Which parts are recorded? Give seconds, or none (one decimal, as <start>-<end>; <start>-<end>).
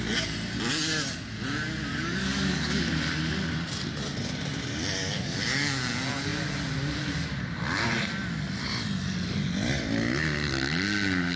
0.0-1.9; 2.8-5.0; 5.8-11.4